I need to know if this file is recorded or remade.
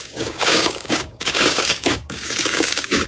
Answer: remade